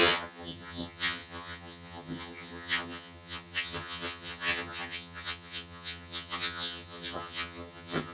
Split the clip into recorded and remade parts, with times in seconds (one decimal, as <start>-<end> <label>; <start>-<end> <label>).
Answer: 0.0-8.1 remade